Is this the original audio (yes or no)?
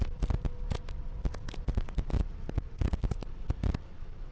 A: yes